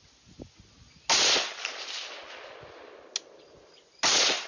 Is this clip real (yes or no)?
yes